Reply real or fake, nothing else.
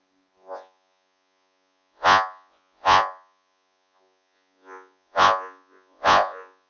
fake